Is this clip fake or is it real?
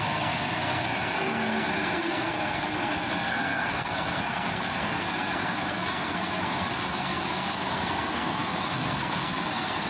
fake